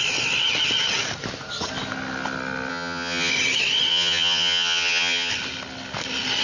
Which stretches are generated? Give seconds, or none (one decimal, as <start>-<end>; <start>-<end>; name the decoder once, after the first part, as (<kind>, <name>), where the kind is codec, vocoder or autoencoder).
2.7-3.3 (vocoder, HiFi-GAN); 3.9-5.3